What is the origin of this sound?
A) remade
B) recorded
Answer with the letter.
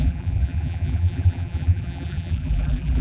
A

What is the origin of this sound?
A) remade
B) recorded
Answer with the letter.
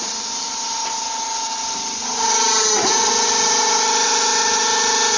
B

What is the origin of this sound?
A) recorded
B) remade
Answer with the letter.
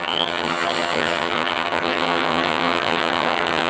B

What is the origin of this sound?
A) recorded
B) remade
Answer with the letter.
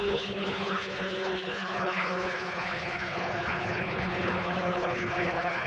B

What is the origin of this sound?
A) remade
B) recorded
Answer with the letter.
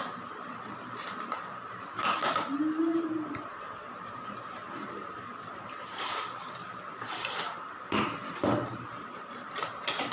A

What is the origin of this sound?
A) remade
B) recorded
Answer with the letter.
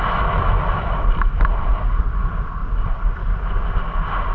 B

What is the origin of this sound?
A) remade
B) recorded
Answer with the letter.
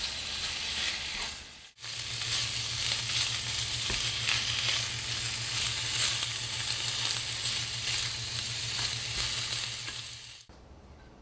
B